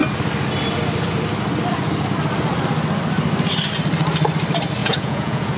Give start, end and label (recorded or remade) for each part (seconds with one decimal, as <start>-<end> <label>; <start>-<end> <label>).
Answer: 0.0-4.8 recorded; 4.8-5.6 remade